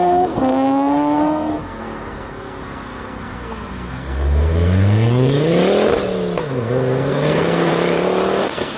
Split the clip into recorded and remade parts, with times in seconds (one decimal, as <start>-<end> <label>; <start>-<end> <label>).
0.0-5.5 remade; 5.5-6.4 recorded; 6.4-7.7 remade; 7.7-8.4 recorded; 8.4-8.8 remade